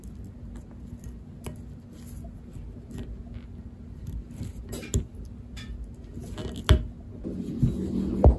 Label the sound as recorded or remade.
recorded